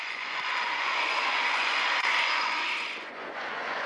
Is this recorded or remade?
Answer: remade